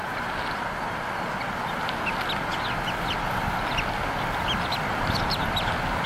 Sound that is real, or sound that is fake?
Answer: real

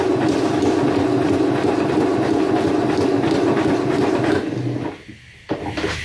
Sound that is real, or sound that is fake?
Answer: real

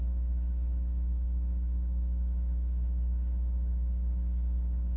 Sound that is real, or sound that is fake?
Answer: fake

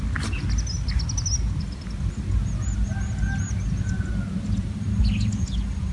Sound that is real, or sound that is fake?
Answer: real